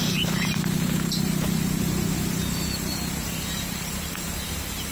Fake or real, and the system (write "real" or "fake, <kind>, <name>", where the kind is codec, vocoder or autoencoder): fake, vocoder, BigVGAN v2